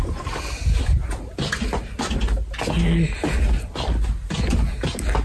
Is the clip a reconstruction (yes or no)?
no